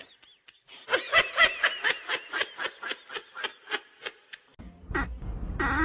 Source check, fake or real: real